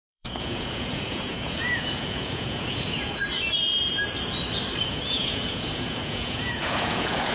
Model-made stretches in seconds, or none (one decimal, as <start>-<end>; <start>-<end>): 0.0-3.2; 4.8-7.3